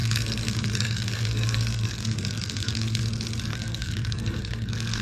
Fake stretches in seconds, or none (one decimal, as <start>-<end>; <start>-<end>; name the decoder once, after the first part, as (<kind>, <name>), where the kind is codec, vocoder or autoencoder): 0.0-3.0 (codec, SNAC); 3.5-5.0